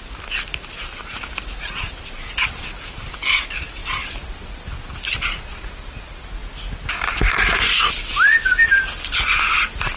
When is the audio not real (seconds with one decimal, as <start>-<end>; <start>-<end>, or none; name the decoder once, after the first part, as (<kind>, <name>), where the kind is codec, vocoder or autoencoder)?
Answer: none